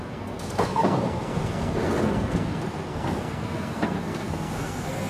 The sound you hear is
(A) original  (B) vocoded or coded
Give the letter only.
B